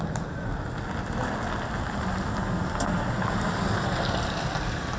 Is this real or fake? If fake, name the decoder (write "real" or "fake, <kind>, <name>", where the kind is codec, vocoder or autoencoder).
real